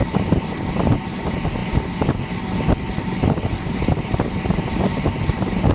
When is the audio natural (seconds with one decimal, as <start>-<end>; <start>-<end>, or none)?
0.0-5.7